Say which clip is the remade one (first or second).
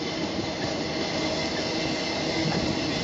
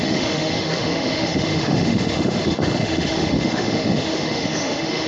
second